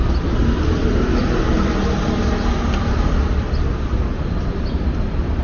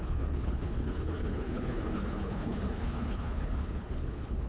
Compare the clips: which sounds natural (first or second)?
first